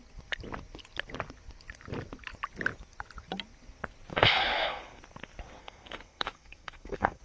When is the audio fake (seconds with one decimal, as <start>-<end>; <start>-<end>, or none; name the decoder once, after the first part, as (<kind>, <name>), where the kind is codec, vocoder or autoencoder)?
4.1-5.0 (codec, SNAC); 5.6-7.2